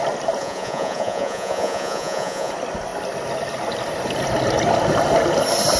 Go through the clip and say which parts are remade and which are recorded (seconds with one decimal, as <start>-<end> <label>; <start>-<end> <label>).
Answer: 0.0-0.4 recorded; 0.4-2.5 remade; 2.5-5.8 recorded